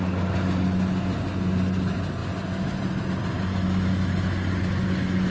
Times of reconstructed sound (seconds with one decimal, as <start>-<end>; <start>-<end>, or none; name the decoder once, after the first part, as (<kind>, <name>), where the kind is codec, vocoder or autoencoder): none